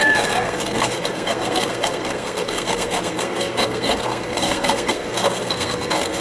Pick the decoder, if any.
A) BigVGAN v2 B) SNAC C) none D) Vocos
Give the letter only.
B